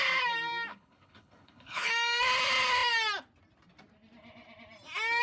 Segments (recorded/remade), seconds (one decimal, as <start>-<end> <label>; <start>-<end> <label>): 0.0-0.7 recorded; 0.7-1.9 remade; 1.9-5.2 recorded

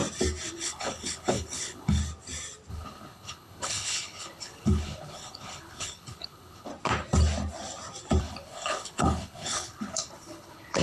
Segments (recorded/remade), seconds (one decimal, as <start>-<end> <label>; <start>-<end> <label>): 0.0-0.5 recorded; 0.5-2.0 remade; 2.0-2.7 recorded; 2.7-6.7 remade; 6.7-8.2 recorded; 8.2-10.8 remade

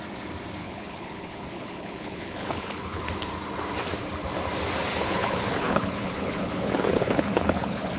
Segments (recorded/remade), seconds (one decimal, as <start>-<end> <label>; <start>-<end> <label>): 0.0-0.6 recorded; 0.6-3.0 remade; 3.0-4.9 recorded; 4.9-8.0 remade

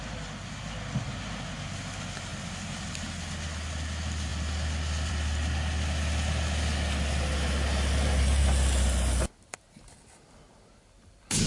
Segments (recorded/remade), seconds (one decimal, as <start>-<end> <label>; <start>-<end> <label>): 0.0-11.5 recorded

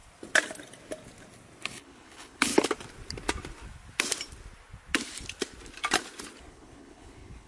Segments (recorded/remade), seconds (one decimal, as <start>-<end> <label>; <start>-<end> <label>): 0.0-1.7 recorded; 1.7-2.5 remade; 2.5-6.5 recorded; 6.5-7.5 remade

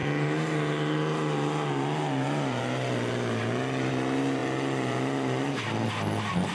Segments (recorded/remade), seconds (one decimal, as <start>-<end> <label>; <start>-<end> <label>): 0.0-6.5 recorded